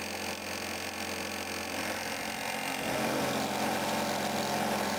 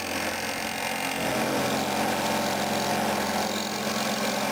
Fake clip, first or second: first